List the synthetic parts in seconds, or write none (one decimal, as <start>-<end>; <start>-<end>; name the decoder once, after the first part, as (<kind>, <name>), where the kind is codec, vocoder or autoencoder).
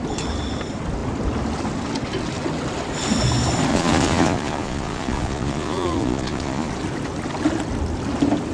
3.7-6.7 (vocoder, Vocos)